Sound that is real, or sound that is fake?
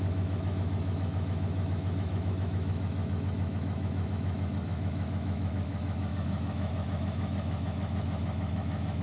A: fake